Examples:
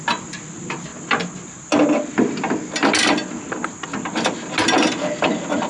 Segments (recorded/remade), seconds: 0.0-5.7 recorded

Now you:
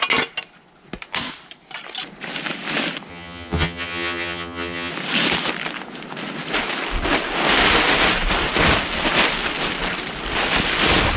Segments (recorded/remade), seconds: 0.0-3.1 recorded; 3.1-4.9 remade; 4.9-11.2 recorded